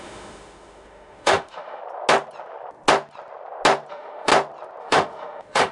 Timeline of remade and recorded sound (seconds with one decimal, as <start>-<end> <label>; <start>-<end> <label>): 0.0-1.8 remade; 1.8-3.9 recorded; 3.9-4.3 remade; 4.3-4.8 recorded; 4.8-5.7 remade